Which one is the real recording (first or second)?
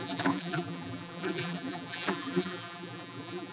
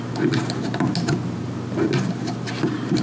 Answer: second